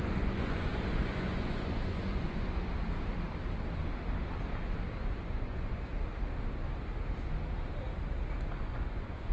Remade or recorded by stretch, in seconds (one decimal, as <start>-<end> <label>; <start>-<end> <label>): 0.0-2.6 remade; 2.6-5.0 recorded; 5.0-5.9 remade; 5.9-8.6 recorded; 8.6-9.3 remade